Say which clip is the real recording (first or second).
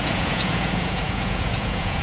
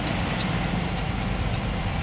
second